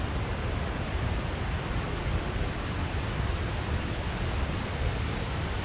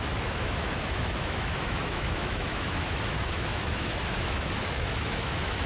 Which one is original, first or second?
first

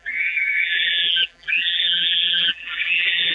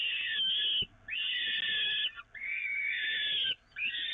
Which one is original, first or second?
second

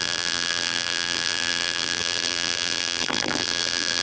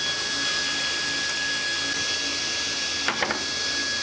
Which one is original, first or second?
second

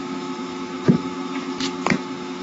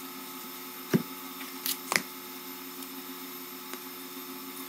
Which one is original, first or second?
second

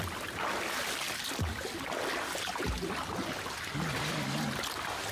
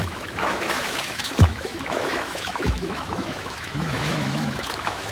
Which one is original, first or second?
first